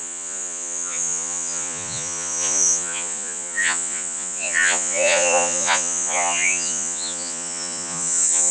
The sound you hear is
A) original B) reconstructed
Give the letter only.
B